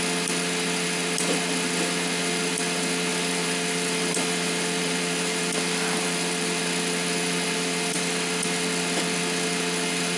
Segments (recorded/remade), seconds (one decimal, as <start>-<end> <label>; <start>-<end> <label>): 0.0-3.1 recorded; 3.1-6.6 remade; 6.6-10.2 recorded